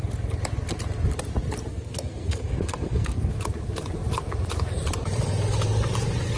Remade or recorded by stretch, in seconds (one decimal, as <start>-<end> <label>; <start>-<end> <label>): 0.0-1.7 recorded; 1.7-3.3 remade; 3.3-6.4 recorded